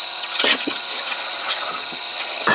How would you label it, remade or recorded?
remade